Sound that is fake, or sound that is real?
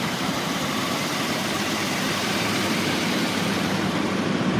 fake